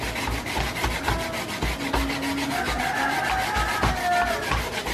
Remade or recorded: recorded